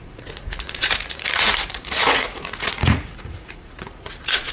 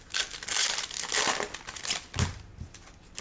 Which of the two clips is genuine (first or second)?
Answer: second